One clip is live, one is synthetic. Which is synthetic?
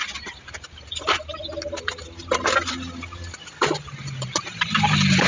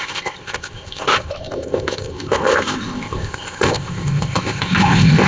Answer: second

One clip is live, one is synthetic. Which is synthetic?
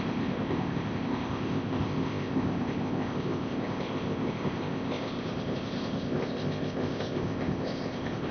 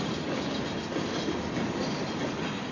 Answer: first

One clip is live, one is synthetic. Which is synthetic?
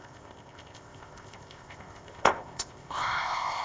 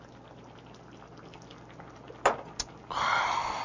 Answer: first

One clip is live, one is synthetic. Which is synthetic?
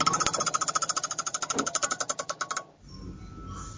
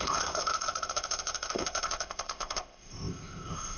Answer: second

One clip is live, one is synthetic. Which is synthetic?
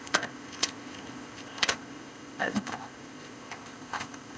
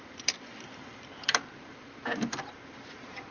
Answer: first